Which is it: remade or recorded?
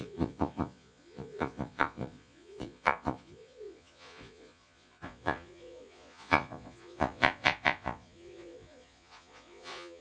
remade